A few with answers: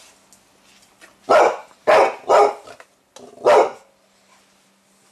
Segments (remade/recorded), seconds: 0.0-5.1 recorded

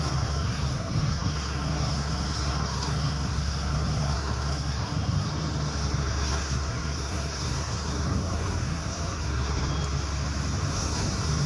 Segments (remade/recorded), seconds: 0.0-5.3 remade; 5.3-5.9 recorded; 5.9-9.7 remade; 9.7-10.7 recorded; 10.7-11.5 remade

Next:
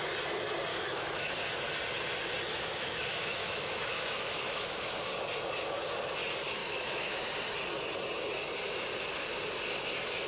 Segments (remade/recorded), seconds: 0.0-0.7 recorded; 0.7-1.3 remade; 1.3-2.5 recorded; 2.5-5.0 remade; 5.0-6.6 recorded; 6.6-7.2 remade; 7.2-10.3 recorded